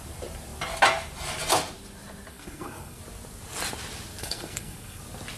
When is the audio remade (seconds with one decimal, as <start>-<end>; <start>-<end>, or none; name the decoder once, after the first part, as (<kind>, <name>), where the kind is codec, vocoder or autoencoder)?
2.3-3.0 (codec, SNAC); 4.2-5.0